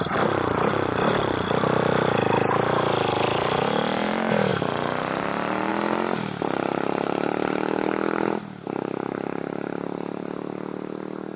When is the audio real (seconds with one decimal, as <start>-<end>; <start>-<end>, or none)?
0.0-11.4